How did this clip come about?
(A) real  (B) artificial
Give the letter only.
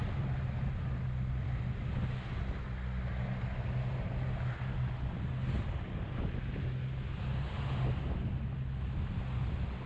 A